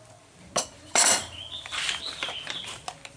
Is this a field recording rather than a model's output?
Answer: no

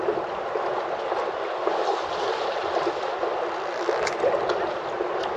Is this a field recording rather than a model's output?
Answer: yes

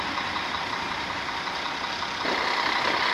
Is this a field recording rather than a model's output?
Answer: yes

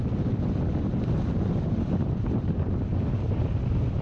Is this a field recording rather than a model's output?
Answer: no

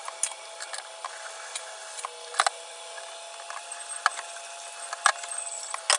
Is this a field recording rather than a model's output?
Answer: yes